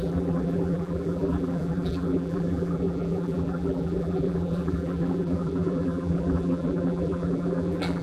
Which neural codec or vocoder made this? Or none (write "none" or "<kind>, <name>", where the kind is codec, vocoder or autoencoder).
vocoder, BigVGAN v2